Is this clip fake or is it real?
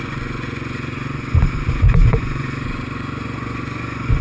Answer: fake